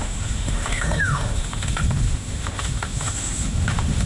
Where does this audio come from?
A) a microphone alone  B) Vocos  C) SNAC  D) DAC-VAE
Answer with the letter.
D